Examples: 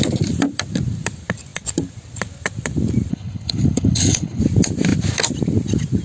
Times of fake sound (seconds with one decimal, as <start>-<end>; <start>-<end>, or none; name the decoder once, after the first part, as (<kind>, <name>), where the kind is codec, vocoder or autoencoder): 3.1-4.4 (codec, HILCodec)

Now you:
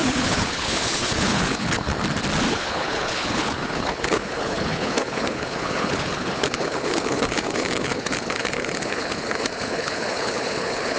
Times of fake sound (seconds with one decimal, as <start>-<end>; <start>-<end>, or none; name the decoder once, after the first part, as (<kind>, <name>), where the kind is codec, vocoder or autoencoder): 0.0-1.9 (codec, HILCodec); 2.5-11.0

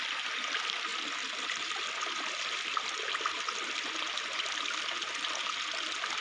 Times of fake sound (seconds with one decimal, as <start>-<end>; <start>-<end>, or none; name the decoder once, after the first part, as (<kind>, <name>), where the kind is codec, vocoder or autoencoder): none

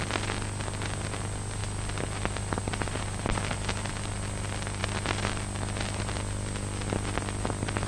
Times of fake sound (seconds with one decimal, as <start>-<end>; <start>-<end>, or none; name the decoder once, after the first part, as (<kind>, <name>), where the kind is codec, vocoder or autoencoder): none

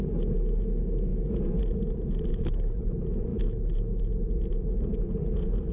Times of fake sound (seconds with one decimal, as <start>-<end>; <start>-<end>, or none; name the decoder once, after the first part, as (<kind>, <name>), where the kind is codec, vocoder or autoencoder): 2.3-2.9 (codec, HILCodec)